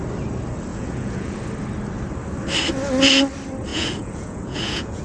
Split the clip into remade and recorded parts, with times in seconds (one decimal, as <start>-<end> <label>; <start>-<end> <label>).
0.0-0.7 recorded; 0.7-1.4 remade; 1.4-3.7 recorded; 3.7-5.0 remade